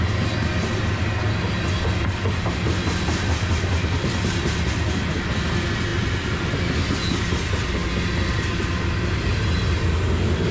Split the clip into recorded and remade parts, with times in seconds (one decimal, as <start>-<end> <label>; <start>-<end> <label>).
0.0-10.5 recorded